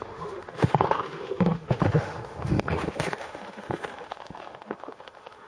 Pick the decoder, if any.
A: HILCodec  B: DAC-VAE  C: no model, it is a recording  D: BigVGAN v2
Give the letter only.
B